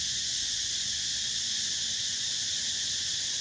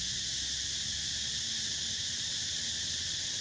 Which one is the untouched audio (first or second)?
second